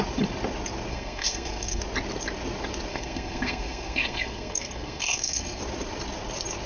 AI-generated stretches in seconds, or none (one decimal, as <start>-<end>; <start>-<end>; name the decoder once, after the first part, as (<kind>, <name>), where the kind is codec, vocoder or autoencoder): 0.9-1.8 (codec, SNAC); 2.9-5.6